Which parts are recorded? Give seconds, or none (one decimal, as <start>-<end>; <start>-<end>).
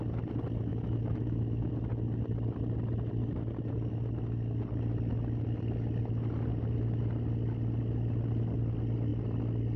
0.0-0.7; 1.7-9.8